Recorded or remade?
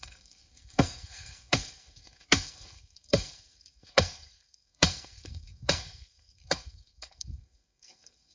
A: remade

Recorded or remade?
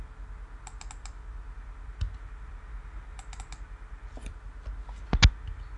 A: recorded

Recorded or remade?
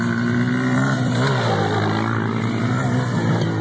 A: recorded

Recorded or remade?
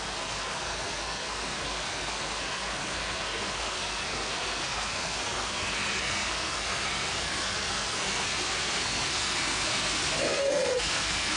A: remade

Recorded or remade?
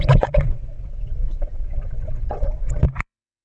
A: remade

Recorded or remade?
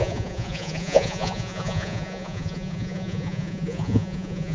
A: remade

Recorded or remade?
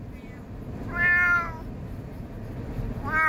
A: recorded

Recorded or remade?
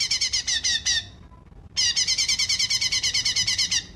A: recorded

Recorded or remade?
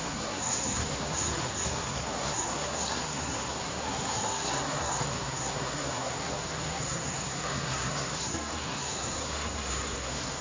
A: remade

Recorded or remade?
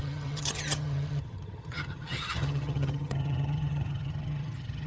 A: remade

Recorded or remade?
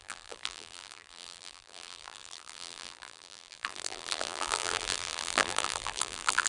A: remade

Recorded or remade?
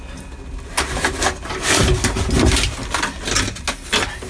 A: recorded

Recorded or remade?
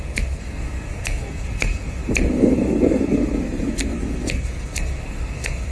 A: remade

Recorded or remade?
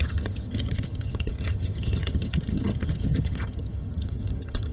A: remade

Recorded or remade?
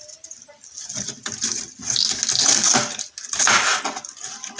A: recorded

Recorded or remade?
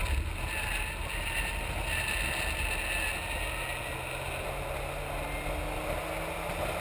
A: recorded